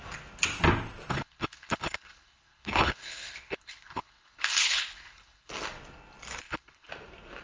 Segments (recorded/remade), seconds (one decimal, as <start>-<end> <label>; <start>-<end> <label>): 0.0-1.1 recorded; 1.1-5.5 remade; 5.5-6.4 recorded; 6.4-6.9 remade; 6.9-7.4 recorded